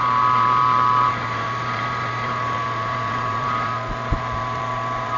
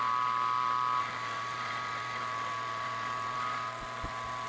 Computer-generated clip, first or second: first